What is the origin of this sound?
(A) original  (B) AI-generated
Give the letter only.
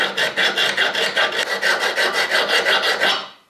A